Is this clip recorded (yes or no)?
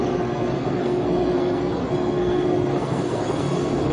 no